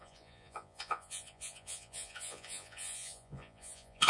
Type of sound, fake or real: fake